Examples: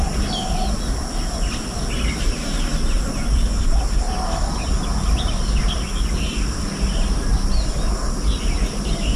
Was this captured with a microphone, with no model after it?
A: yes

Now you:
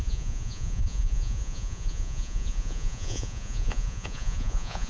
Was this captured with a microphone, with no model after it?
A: no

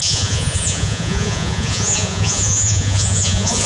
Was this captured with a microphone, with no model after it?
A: no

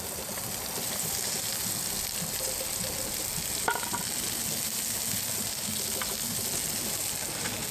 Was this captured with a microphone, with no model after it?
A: yes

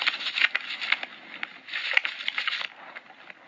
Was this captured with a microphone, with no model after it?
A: yes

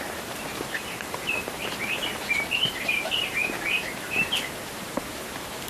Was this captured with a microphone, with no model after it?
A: no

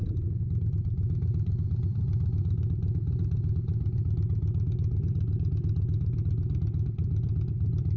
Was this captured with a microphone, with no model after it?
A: no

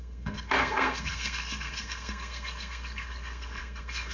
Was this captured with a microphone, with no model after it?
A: no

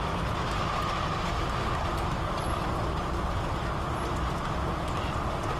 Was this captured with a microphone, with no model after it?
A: yes